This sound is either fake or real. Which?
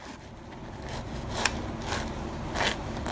real